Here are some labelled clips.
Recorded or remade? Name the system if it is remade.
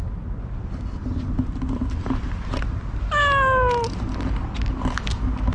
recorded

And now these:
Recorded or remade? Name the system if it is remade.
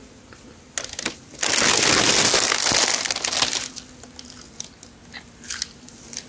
recorded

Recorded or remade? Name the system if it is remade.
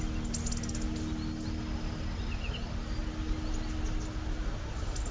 recorded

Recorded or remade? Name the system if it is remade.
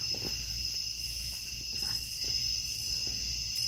recorded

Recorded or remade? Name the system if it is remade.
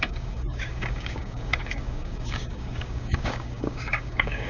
remade, codec, DAC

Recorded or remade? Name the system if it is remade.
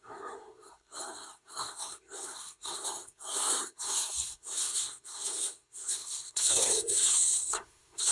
remade, codec, SNAC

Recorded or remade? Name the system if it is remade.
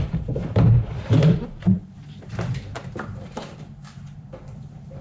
remade, vocoder, BigVGAN v2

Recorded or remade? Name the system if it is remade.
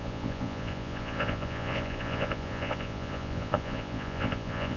remade, vocoder, Vocos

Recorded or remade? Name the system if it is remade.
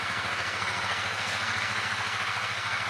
remade, codec, SNAC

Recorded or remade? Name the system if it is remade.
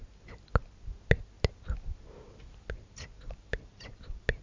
recorded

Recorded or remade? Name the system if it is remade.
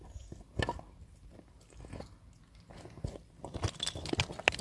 recorded